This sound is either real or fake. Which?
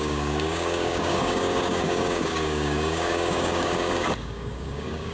fake